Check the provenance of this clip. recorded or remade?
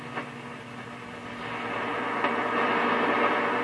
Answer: recorded